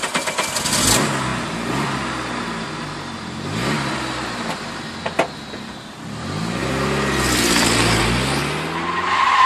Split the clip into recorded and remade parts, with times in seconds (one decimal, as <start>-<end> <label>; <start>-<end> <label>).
0.0-9.5 recorded